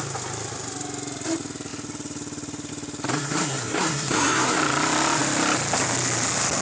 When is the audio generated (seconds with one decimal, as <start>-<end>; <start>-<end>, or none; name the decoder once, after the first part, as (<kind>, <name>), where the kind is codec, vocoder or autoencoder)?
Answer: 3.1-4.6 (codec, SNAC)